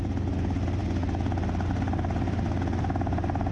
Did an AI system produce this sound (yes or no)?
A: no